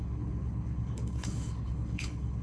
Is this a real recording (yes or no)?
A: no